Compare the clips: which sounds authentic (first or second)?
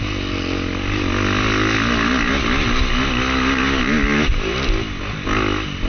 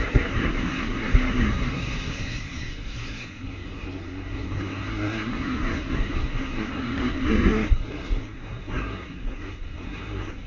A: first